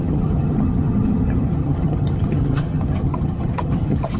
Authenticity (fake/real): fake